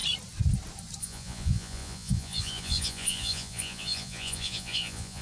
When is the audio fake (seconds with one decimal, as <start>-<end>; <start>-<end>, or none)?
1.0-5.2